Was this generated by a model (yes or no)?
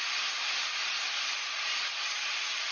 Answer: no